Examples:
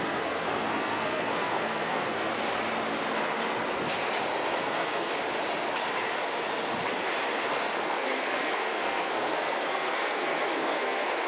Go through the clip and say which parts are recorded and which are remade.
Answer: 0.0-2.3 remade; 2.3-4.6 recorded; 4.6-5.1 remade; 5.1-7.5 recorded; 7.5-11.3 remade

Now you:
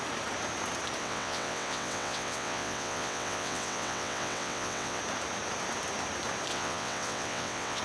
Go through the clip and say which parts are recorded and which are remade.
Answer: 0.0-1.0 recorded; 1.0-5.0 remade; 5.0-6.5 recorded; 6.5-7.8 remade

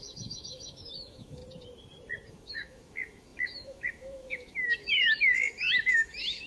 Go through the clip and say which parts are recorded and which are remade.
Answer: 0.0-1.4 remade; 1.4-2.3 recorded; 2.3-6.5 remade

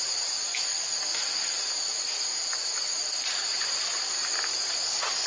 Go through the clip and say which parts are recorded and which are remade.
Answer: 0.0-4.2 recorded; 4.2-4.8 remade; 4.8-5.3 recorded

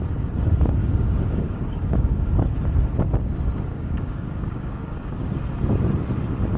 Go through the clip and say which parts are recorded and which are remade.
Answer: 0.0-0.8 recorded; 0.8-2.3 remade; 2.3-3.7 recorded; 3.7-5.3 remade; 5.3-6.6 recorded